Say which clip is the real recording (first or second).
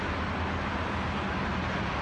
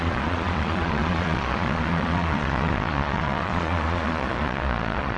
first